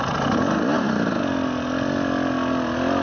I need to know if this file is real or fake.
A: real